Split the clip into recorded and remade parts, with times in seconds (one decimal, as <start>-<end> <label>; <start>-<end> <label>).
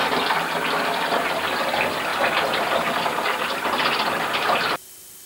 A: 0.0-1.5 remade; 1.5-2.1 recorded; 2.1-5.3 remade